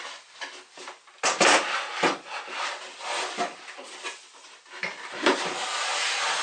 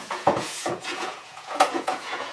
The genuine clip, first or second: first